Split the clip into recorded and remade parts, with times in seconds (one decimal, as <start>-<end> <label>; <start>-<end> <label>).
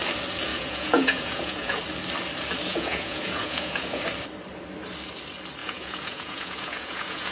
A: 0.0-0.5 recorded; 0.5-1.8 remade; 1.8-2.7 recorded; 2.7-4.0 remade; 4.0-5.6 recorded; 5.6-7.3 remade